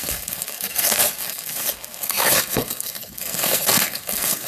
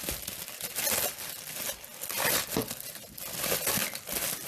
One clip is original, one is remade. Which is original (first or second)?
second